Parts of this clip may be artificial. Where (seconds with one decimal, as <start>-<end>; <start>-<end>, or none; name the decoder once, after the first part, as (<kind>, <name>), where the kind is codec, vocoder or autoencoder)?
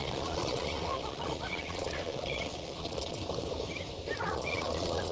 0.0-3.2 (vocoder, Vocos); 4.2-5.1